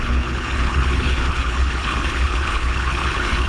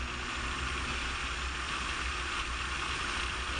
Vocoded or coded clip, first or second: first